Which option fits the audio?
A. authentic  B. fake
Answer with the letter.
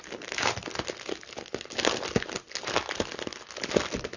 A